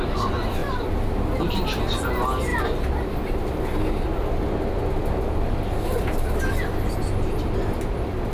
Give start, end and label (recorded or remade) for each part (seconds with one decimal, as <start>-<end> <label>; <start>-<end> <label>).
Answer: 0.0-8.3 recorded